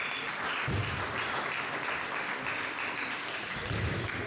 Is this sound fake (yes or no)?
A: no